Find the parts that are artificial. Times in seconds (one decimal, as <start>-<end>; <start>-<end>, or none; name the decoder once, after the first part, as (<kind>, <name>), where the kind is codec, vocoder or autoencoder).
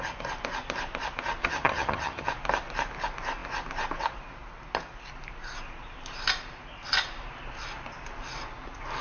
1.4-2.3 (vocoder, HiFi-GAN)